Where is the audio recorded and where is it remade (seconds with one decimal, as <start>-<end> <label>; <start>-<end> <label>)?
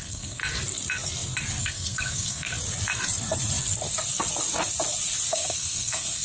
0.0-0.4 remade; 0.4-1.6 recorded; 1.6-2.5 remade; 2.5-5.3 recorded; 5.3-6.2 remade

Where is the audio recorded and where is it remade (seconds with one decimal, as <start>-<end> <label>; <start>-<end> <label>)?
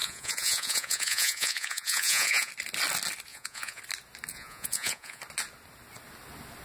0.0-2.5 remade; 2.5-3.3 recorded; 3.3-3.8 remade; 3.8-4.3 recorded; 4.3-5.2 remade; 5.2-6.6 recorded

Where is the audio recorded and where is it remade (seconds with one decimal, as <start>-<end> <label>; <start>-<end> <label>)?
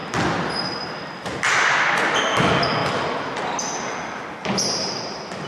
0.0-5.5 remade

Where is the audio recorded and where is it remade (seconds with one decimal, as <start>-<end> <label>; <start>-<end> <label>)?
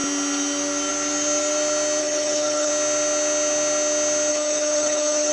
0.0-2.0 recorded; 2.0-2.7 remade; 2.7-4.3 recorded; 4.3-5.3 remade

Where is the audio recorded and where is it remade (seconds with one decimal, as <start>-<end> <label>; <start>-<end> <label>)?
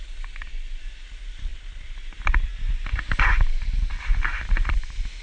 0.0-5.2 recorded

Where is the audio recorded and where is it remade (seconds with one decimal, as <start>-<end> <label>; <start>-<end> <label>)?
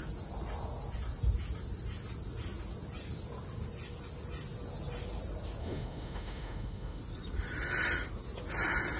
0.0-5.6 recorded; 5.6-7.0 remade; 7.0-9.0 recorded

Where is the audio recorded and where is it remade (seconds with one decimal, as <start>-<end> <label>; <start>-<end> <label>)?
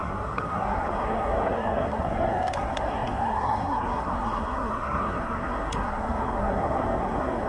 0.0-7.5 remade